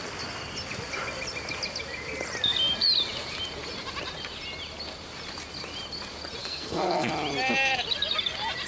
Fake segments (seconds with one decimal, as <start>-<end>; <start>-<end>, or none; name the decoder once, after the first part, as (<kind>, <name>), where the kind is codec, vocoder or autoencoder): 6.4-7.1 (codec, SNAC)